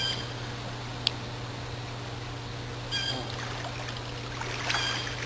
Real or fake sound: real